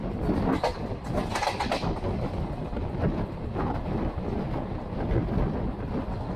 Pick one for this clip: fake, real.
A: real